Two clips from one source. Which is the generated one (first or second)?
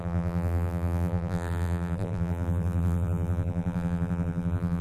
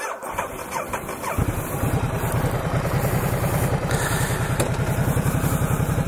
first